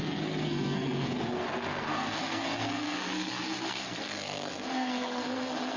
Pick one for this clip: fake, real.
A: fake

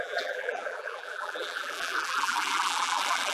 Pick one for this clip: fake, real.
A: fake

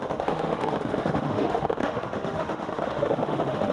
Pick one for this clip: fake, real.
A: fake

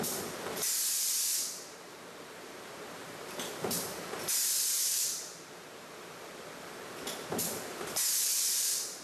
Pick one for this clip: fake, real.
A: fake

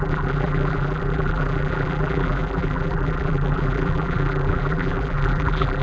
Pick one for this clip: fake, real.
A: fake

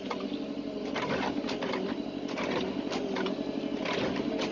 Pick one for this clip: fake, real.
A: real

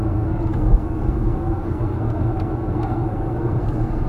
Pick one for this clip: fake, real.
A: fake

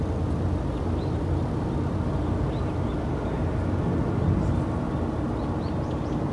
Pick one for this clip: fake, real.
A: real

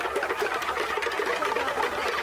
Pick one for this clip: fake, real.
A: real